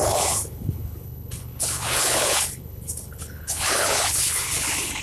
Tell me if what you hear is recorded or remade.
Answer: remade